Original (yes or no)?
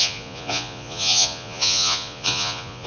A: no